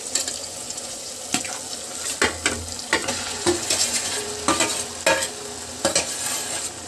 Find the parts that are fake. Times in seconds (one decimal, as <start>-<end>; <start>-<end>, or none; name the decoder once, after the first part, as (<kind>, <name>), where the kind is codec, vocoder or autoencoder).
0.4-1.1 (vocoder, Vocos); 3.0-4.3